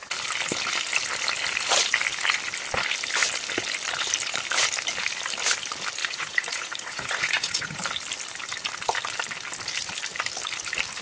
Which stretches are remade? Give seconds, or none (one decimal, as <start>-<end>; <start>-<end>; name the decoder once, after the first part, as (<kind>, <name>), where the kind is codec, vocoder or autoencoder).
6.0-7.8 (vocoder, Vocos)